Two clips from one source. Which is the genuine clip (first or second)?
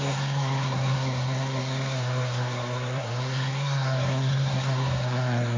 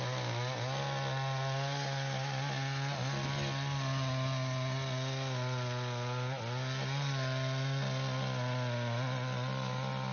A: second